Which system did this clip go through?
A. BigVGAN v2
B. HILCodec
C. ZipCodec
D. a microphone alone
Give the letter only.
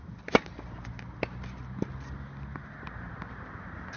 D